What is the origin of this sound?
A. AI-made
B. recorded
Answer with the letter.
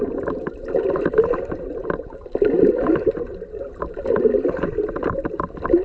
B